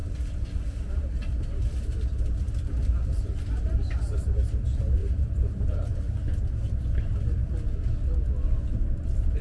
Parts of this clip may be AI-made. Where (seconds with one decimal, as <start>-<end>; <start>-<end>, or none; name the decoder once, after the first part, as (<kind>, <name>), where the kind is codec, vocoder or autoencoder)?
0.0-1.6 (vocoder, BigVGAN v2); 5.0-5.6